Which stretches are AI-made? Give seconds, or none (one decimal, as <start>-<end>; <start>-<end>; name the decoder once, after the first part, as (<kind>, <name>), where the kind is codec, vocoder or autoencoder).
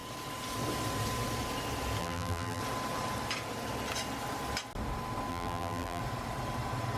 2.0-2.6 (vocoder, BigVGAN v2); 5.3-6.0